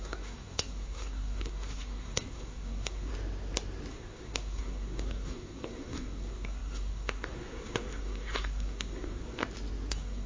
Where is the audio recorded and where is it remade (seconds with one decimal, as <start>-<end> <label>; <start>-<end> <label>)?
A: 0.0-3.1 remade; 3.1-3.9 recorded; 3.9-9.4 remade; 9.4-9.9 recorded; 9.9-10.3 remade